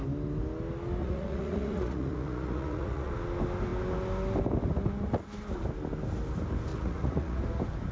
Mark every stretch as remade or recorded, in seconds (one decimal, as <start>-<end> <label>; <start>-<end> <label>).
0.0-1.0 recorded; 1.0-3.1 remade; 3.1-6.7 recorded; 6.7-7.4 remade; 7.4-7.9 recorded